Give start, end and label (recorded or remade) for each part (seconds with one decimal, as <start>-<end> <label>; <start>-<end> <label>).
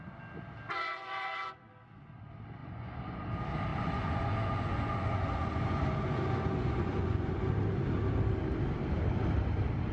0.0-0.7 recorded; 0.7-1.6 remade; 1.6-2.6 recorded; 2.6-3.2 remade; 3.2-3.7 recorded; 3.7-7.5 remade; 7.5-9.9 recorded